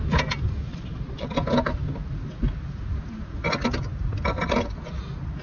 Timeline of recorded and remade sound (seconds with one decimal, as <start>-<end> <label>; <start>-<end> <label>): 0.0-0.7 recorded; 0.7-1.3 remade; 1.3-5.4 recorded